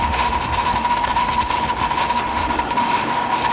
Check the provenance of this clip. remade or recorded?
remade